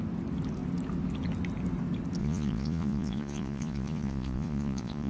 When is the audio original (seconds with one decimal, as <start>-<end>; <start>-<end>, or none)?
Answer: 0.0-2.2